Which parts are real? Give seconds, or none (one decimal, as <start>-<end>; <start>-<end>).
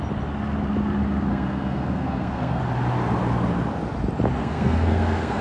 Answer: 0.0-1.3; 2.6-4.4